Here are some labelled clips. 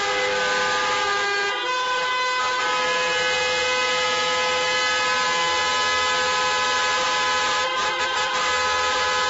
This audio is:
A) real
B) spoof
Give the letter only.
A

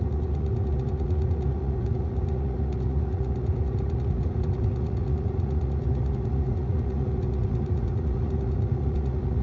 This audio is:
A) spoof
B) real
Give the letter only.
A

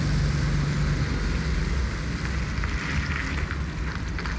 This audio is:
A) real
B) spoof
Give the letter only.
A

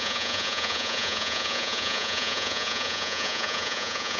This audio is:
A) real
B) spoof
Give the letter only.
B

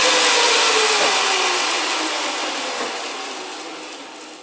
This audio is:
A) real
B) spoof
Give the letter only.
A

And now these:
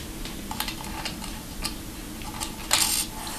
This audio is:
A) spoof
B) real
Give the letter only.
B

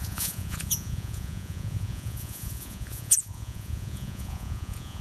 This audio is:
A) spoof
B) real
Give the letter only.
A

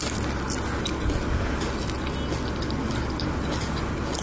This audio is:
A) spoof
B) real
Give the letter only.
B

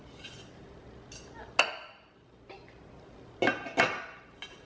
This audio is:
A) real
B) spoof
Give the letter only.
A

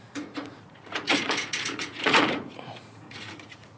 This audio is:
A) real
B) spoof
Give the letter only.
B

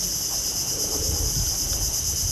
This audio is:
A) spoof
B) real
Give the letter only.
B